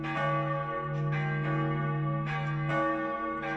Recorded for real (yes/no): yes